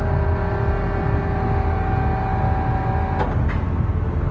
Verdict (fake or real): real